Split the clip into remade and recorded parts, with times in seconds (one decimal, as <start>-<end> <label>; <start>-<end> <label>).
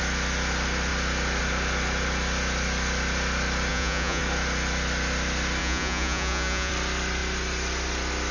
0.0-3.7 recorded; 3.7-4.2 remade; 4.2-5.6 recorded; 5.6-6.7 remade; 6.7-8.3 recorded